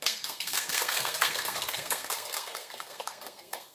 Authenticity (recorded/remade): remade